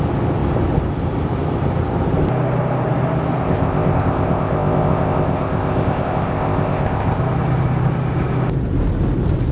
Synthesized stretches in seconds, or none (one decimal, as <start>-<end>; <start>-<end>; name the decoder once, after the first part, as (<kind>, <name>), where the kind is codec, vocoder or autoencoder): 3.4-7.2 (codec, ZipCodec)